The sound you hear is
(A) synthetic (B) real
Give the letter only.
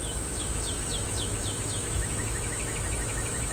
A